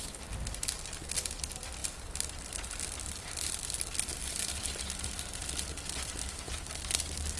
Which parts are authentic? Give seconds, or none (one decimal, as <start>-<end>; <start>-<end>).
0.0-1.8; 6.2-7.4